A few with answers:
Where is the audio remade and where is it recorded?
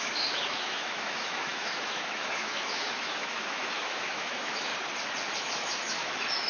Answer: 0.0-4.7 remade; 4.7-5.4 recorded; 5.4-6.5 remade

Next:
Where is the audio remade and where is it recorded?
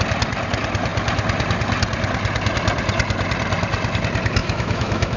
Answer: 0.0-4.4 recorded; 4.4-5.2 remade